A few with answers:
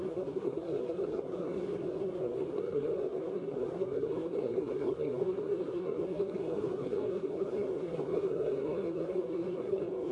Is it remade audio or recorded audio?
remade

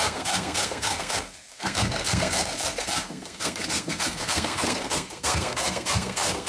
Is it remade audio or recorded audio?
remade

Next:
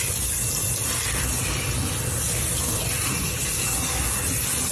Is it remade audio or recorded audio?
recorded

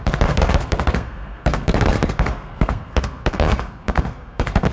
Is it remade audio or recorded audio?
remade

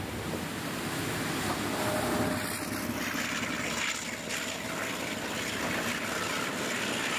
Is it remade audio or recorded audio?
recorded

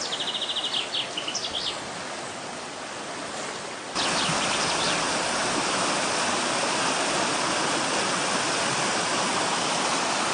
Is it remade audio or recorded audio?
recorded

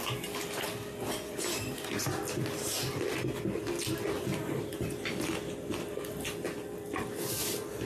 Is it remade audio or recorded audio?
recorded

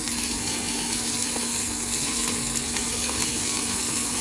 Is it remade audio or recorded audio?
remade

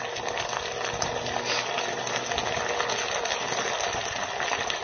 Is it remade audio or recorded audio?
recorded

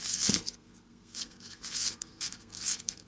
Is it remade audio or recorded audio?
remade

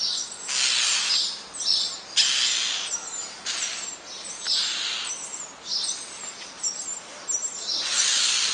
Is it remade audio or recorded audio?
recorded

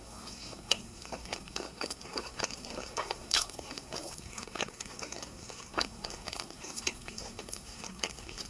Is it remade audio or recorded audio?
remade